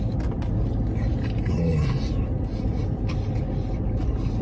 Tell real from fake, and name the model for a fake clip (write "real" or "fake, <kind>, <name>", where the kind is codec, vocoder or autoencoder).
real